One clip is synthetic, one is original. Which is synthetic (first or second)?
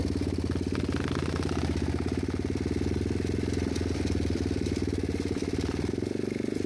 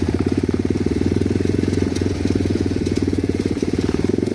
second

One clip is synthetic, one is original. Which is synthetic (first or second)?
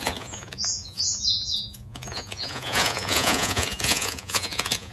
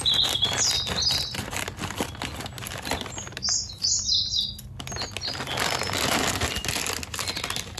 first